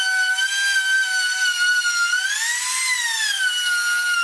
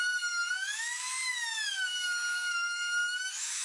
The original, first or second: first